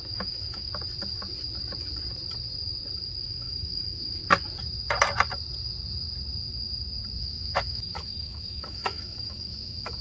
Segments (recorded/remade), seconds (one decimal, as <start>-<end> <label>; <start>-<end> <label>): 0.0-0.7 remade; 0.7-3.2 recorded; 3.2-4.2 remade; 4.2-7.2 recorded; 7.2-10.0 remade